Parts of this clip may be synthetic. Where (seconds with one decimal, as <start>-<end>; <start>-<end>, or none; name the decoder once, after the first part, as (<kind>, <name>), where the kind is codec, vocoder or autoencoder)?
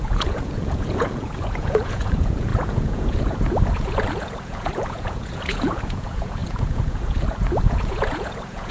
0.0-8.7 (vocoder, Vocos)